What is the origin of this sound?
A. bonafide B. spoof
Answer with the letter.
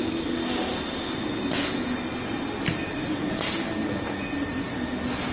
A